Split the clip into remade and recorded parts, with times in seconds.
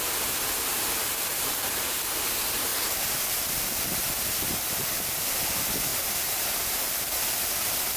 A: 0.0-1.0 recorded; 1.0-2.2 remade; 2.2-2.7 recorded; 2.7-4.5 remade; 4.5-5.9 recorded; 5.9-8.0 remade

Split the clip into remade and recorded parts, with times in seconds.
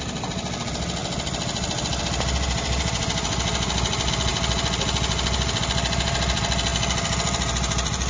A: 0.0-8.1 recorded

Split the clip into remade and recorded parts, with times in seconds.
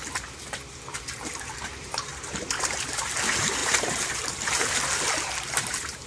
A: 0.0-0.7 recorded; 0.7-2.1 remade; 2.1-2.6 recorded; 2.6-6.1 remade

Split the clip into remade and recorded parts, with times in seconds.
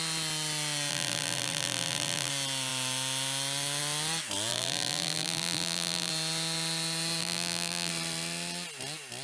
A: 0.0-0.9 recorded; 0.9-2.3 remade; 2.3-4.5 recorded; 4.5-6.1 remade; 6.1-7.2 recorded; 7.2-7.9 remade; 7.9-9.2 recorded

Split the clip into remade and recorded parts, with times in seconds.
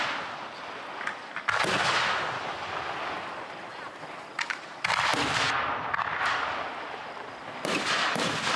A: 0.0-8.6 recorded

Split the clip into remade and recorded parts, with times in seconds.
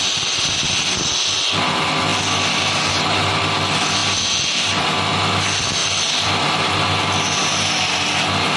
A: 0.0-4.0 recorded; 4.0-5.1 remade; 5.1-5.8 recorded; 5.8-6.7 remade; 6.7-8.6 recorded